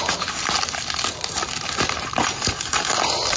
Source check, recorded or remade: recorded